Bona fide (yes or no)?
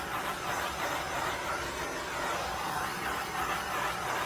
yes